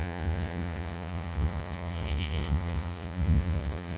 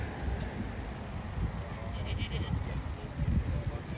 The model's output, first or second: first